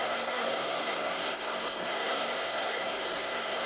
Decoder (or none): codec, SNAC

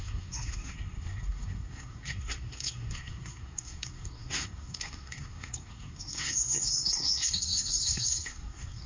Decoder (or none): codec, SNAC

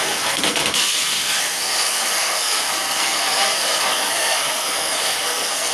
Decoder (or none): codec, SNAC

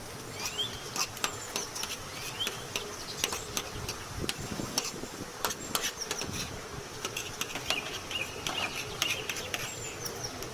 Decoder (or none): none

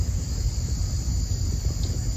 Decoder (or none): none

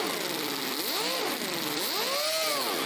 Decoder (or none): none